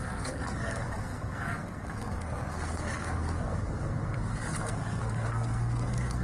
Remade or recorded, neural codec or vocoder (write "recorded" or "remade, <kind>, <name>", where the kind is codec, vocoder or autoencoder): remade, codec, SNAC